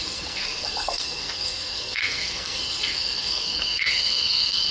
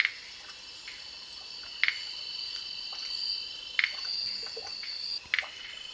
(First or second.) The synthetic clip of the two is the first